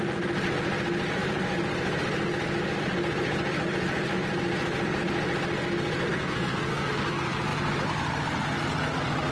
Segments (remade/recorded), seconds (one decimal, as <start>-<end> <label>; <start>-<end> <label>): 0.0-6.1 recorded; 6.1-6.9 remade; 6.9-9.3 recorded